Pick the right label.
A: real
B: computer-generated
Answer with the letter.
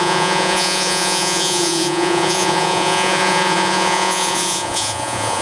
B